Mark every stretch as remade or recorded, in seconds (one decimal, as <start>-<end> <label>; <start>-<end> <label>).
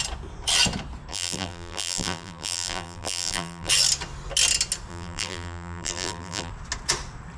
0.0-1.1 recorded; 1.1-3.7 remade; 3.7-4.9 recorded; 4.9-6.5 remade; 6.5-7.4 recorded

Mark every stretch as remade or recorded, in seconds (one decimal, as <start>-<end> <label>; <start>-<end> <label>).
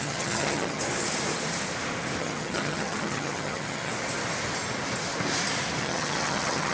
0.0-0.8 remade; 0.8-2.2 recorded; 2.2-3.9 remade; 3.9-5.8 recorded; 5.8-6.7 remade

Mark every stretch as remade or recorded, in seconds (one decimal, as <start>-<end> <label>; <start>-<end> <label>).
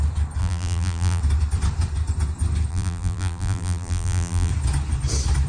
0.0-0.4 recorded; 0.4-1.2 remade; 1.2-2.7 recorded; 2.7-4.5 remade; 4.5-5.5 recorded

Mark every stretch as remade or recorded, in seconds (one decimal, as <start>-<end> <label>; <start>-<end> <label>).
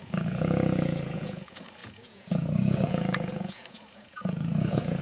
0.0-5.0 remade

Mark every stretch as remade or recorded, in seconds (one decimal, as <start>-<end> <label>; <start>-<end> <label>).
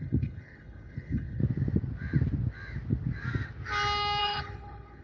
0.0-1.4 remade; 1.4-4.2 recorded; 4.2-5.0 remade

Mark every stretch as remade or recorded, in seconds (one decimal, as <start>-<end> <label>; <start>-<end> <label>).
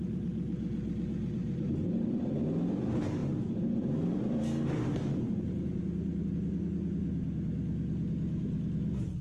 0.0-9.2 recorded